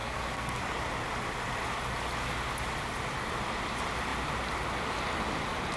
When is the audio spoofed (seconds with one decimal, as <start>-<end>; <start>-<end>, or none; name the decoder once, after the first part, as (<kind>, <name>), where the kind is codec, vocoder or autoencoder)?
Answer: 0.0-0.6 (codec, SNAC)